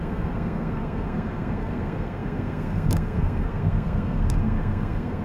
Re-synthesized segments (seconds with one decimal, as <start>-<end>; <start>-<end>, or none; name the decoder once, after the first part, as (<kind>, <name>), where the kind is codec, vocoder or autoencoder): 0.0-5.2 (codec, SNAC)